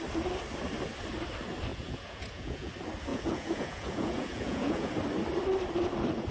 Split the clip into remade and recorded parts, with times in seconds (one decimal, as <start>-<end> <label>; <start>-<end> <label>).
0.0-1.7 recorded; 1.7-2.7 remade; 2.7-3.1 recorded; 3.1-4.9 remade; 4.9-6.3 recorded